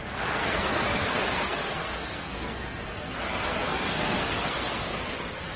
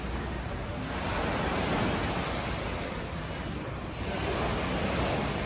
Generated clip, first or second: first